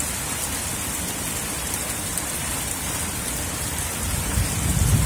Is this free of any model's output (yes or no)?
no